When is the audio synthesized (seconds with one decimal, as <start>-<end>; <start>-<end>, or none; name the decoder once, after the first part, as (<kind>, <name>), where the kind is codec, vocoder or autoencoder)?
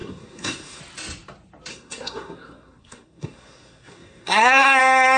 0.0-0.8 (codec, SNAC); 1.7-4.8